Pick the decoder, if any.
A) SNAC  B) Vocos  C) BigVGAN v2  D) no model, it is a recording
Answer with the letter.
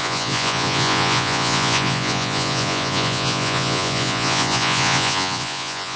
B